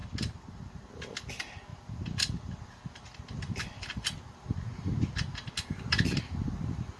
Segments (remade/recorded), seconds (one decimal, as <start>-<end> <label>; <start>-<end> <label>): 0.0-0.8 remade; 0.8-1.7 recorded; 1.7-4.2 remade; 4.2-7.0 recorded